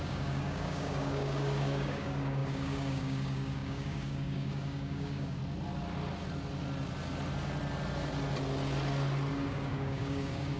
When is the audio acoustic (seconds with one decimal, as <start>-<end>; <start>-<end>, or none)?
5.4-9.3